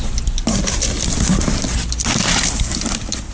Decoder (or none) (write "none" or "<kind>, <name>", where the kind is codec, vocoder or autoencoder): none